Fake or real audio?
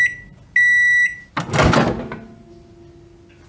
real